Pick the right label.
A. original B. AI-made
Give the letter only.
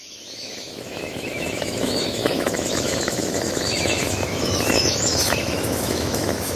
B